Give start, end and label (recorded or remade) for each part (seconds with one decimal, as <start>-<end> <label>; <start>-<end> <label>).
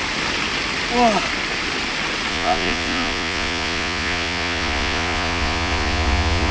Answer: 0.0-2.3 recorded; 2.3-6.5 remade